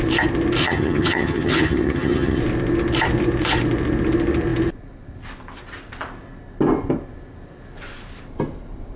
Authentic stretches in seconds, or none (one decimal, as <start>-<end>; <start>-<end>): 0.0-0.6; 2.4-9.0